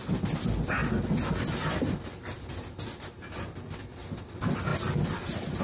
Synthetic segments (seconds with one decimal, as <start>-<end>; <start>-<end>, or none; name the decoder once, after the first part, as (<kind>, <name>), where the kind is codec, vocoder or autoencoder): none